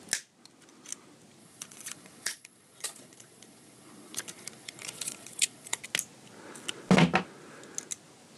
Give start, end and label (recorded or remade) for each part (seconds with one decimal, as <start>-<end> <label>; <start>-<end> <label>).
0.0-1.4 recorded; 1.4-5.8 remade; 5.8-8.4 recorded